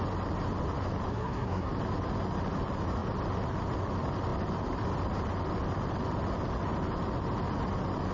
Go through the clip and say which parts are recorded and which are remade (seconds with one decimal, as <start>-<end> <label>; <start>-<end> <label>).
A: 0.0-1.1 recorded; 1.1-1.7 remade; 1.7-8.1 recorded